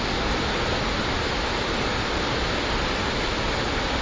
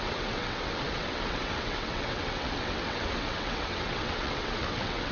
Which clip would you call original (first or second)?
first